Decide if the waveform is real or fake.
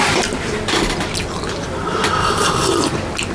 real